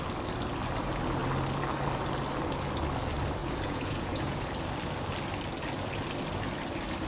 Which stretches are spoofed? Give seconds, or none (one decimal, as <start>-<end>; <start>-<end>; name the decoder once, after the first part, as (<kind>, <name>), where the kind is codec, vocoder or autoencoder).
3.4-4.4 (vocoder, Vocos)